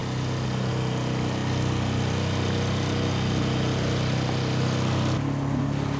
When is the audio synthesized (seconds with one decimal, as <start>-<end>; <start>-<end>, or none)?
none